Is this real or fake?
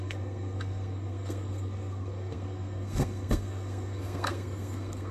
fake